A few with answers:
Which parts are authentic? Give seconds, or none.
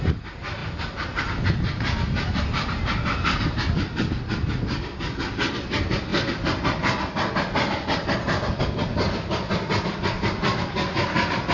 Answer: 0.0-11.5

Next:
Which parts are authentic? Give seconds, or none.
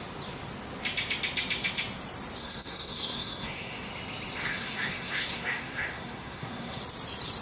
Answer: 0.0-2.4; 3.9-4.4; 6.8-7.4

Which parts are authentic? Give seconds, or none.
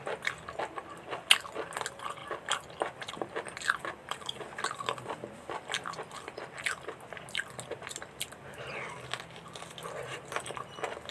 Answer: 0.0-11.1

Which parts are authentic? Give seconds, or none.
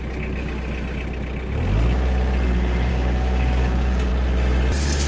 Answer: 0.0-2.9; 4.1-5.1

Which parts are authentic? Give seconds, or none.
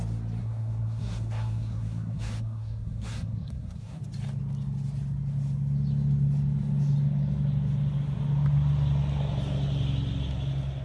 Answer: 0.0-0.4; 4.0-10.8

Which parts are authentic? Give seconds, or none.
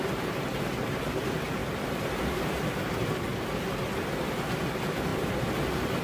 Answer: 0.0-6.0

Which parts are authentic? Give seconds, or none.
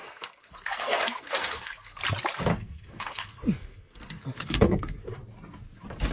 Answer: 2.0-2.5; 5.1-6.1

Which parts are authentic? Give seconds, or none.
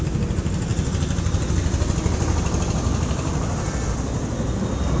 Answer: 0.0-5.0